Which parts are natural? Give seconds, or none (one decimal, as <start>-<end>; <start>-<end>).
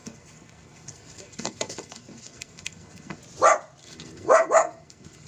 3.2-3.8